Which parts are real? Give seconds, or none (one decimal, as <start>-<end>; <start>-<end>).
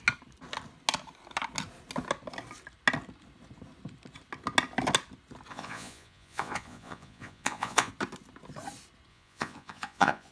0.0-5.5; 7.9-9.1